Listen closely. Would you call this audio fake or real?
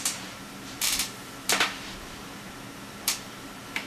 fake